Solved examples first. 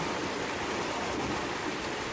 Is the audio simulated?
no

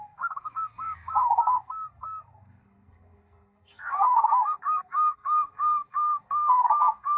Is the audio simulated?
yes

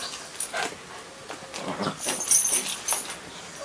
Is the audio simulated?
no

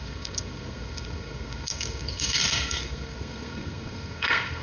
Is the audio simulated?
yes